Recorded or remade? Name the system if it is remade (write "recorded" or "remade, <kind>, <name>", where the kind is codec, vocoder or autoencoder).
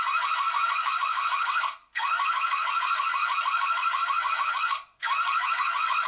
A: remade, codec, SNAC